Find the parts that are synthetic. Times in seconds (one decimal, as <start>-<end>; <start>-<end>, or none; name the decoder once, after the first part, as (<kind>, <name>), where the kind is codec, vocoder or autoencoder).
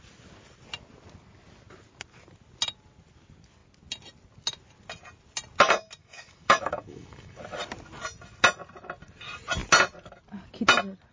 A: 6.0-7.4 (autoencoder, DAC-VAE)